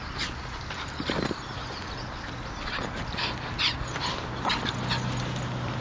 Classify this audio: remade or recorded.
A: recorded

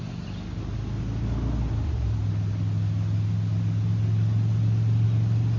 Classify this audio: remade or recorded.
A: recorded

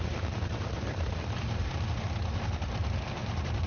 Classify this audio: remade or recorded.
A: remade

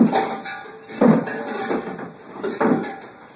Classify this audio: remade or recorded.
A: remade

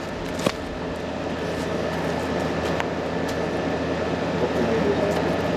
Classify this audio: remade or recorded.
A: recorded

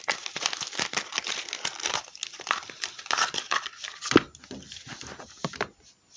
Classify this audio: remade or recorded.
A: recorded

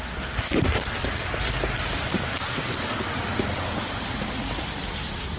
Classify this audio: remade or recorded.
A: remade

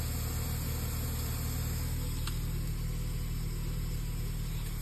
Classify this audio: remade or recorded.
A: recorded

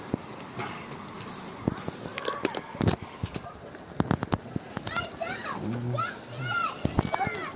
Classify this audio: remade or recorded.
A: recorded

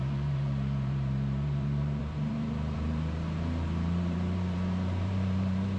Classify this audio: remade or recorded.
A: remade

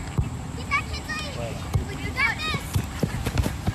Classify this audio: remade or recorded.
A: remade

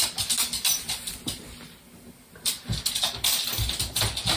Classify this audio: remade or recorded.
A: recorded